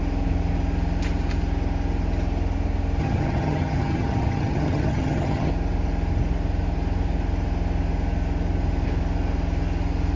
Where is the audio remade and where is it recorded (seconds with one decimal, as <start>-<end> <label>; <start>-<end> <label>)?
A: 0.0-3.0 recorded; 3.0-5.5 remade; 5.5-10.2 recorded